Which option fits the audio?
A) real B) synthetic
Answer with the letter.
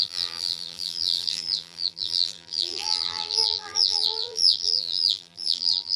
B